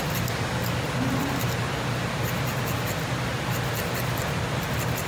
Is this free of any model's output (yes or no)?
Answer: yes